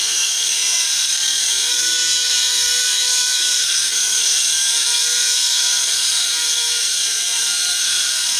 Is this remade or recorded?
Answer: remade